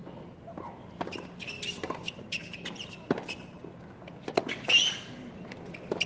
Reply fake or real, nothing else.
real